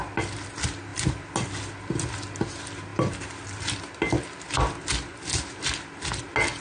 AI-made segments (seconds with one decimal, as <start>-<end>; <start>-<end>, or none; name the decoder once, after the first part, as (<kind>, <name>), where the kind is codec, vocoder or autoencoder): none

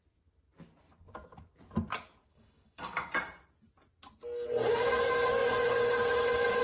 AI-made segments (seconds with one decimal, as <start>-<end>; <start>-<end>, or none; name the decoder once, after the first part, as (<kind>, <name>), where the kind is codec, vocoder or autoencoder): 2.3-3.1 (codec, DAC)

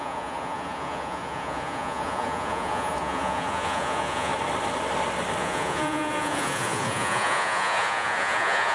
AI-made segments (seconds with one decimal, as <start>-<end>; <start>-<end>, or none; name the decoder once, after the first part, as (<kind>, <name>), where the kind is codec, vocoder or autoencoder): 0.0-4.3 (vocoder, Vocos); 5.4-8.7

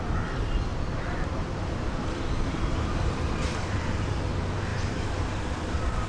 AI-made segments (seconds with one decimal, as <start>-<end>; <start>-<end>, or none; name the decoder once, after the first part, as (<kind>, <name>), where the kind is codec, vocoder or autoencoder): 0.7-4.2 (vocoder, BigVGAN v2); 4.7-5.4

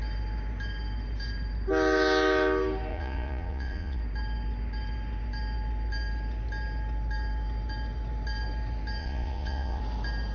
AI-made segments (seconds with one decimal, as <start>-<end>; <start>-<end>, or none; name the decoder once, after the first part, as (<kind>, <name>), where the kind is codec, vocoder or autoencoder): 2.9-4.0 (vocoder, Vocos); 9.0-9.8